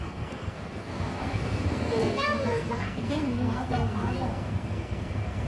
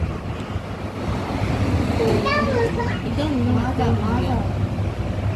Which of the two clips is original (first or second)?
second